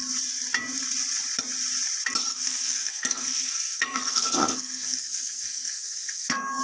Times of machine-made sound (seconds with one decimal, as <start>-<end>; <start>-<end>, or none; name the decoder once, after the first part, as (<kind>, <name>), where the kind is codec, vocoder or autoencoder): 2.3-6.6 (codec, SNAC)